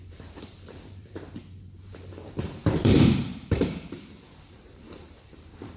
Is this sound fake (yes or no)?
yes